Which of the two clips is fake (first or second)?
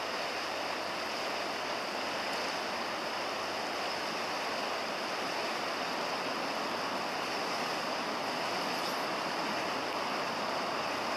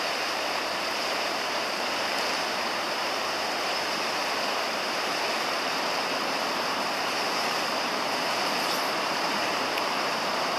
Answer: second